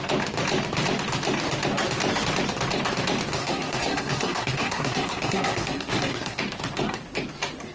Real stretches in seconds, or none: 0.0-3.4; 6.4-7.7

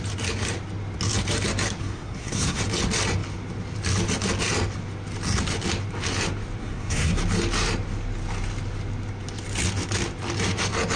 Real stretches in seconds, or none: 0.0-1.8; 2.6-6.6; 7.2-11.0

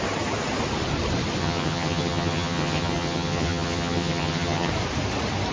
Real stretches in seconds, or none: 0.0-1.4; 4.7-5.5